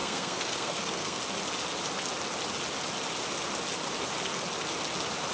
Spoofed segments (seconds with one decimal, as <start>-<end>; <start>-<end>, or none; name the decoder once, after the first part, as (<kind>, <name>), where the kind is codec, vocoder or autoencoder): 0.0-1.2 (codec, SNAC)